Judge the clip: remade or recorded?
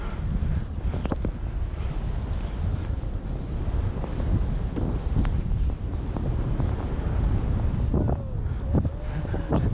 recorded